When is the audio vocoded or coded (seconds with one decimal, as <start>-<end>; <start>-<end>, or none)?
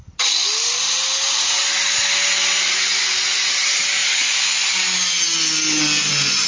none